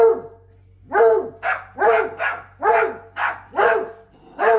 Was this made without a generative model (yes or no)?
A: yes